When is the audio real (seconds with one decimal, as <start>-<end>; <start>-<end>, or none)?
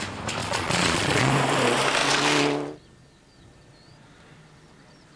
0.0-0.4; 1.3-5.2